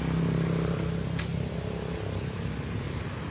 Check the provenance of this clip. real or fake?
real